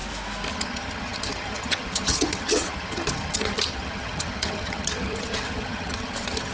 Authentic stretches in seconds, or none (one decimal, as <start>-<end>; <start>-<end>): 0.0-0.5